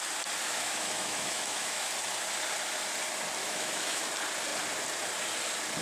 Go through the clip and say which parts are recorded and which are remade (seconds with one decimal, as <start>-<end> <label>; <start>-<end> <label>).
0.0-0.4 recorded; 0.4-1.9 remade; 1.9-3.4 recorded; 3.4-4.1 remade; 4.1-5.8 recorded